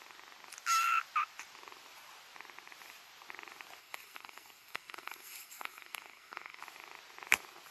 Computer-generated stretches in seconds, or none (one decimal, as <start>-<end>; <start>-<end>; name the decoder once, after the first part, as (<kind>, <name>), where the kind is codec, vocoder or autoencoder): 3.8-6.6 (codec, SNAC)